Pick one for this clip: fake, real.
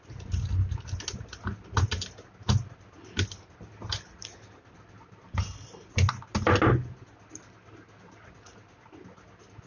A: real